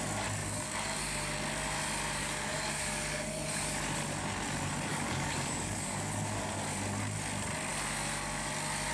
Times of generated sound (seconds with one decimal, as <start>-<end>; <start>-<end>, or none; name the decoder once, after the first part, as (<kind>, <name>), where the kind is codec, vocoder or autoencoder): 0.4-1.0 (codec, DAC); 2.2-3.4; 4.9-6.5

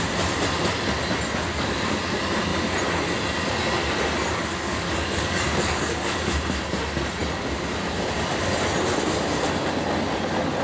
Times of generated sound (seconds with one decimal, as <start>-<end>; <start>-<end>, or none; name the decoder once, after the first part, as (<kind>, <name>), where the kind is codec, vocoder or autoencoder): 1.5-2.0 (codec, DAC); 4.5-6.3

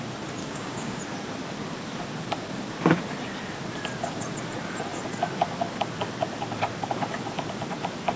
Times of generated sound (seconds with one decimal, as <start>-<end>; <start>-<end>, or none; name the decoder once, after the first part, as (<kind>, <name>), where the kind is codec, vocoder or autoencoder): 0.4-1.0 (codec, DAC)

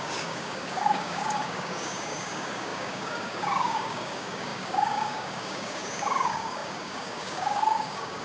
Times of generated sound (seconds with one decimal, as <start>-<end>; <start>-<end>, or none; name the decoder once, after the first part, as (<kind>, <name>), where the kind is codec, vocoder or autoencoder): 0.0-8.2 (codec, DAC)

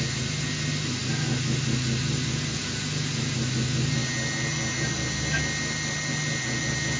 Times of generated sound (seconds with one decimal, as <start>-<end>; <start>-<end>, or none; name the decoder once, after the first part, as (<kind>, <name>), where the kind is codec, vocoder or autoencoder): none

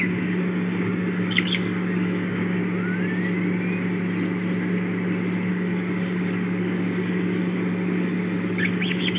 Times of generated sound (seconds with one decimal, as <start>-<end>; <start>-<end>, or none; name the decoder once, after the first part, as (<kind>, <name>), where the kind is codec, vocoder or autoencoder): 0.0-2.6 (codec, DAC); 5.5-9.2